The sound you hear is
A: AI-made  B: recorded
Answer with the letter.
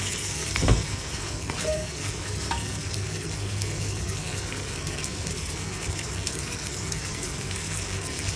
A